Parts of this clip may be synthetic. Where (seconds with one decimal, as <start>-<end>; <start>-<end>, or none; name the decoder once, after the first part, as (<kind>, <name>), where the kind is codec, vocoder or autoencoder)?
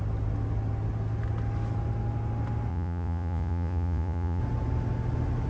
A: 2.7-4.4 (vocoder, Vocos)